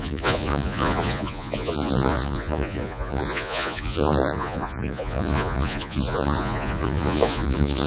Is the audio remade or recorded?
remade